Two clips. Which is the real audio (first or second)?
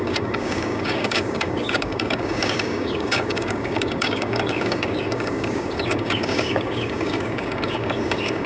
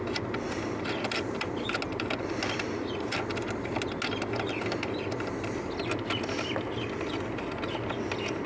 second